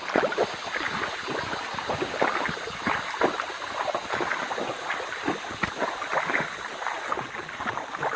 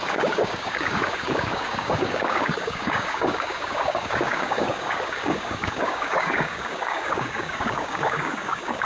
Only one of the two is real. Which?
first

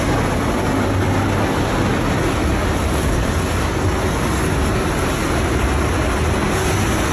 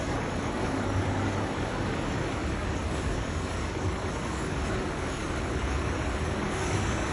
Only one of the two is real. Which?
first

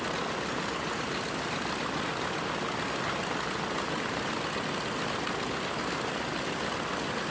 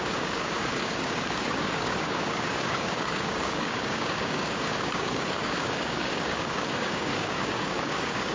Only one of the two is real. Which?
first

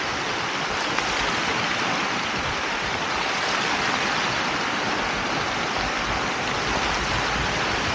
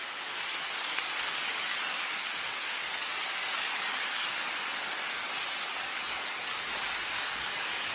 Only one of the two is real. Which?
first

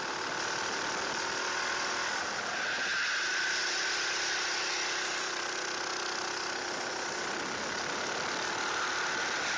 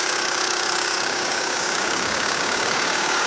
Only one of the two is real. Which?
first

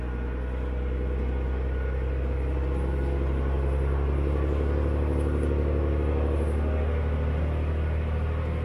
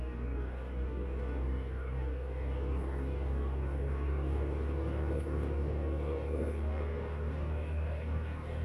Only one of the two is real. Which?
first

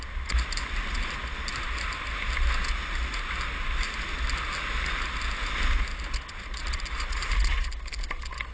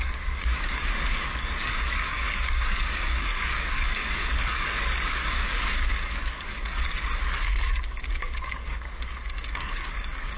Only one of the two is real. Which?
first